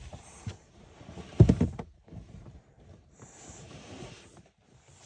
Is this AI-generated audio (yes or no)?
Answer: yes